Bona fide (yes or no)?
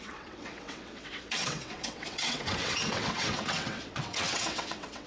no